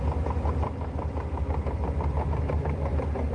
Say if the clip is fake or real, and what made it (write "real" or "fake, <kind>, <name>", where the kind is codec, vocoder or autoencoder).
real